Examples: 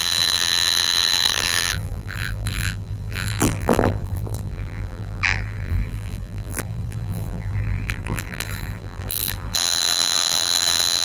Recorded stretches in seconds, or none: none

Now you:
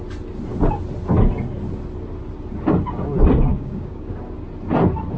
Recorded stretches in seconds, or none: 0.0-3.5; 4.1-5.2

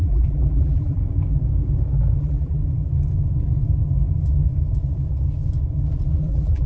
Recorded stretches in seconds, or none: 1.0-2.2; 2.6-6.1

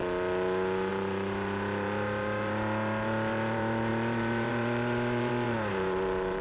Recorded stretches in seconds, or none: 0.0-0.9

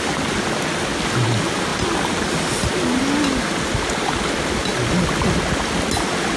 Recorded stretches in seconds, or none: 0.0-6.4

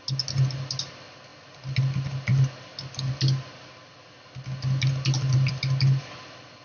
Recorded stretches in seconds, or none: 0.0-6.6